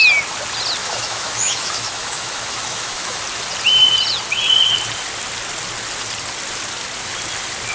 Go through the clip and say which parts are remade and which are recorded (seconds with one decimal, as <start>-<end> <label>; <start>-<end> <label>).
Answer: 0.0-0.8 recorded; 0.8-3.2 remade; 3.2-7.7 recorded